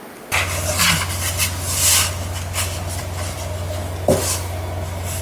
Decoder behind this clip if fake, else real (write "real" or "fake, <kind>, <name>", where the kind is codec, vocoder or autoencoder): real